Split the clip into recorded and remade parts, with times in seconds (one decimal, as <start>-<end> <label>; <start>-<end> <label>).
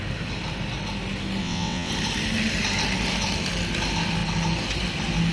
0.0-1.4 recorded; 1.4-1.9 remade; 1.9-5.3 recorded